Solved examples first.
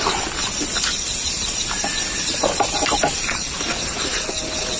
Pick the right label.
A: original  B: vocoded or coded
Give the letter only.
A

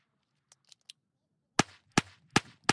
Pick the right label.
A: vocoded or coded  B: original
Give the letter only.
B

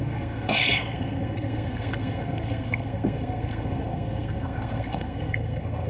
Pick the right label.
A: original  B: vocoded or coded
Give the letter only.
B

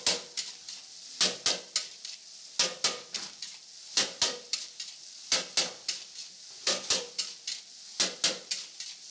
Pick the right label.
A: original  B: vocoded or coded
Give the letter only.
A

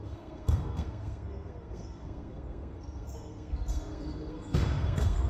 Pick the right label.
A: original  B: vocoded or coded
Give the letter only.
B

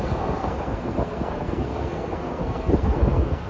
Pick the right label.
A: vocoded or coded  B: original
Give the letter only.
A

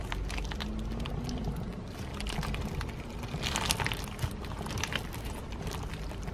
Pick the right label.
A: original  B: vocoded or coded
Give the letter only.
A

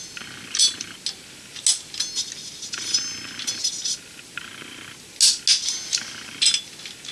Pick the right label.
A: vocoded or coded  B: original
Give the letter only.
B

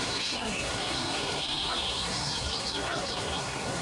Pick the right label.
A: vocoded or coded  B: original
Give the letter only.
A